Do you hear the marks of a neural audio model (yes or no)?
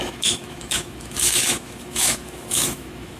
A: yes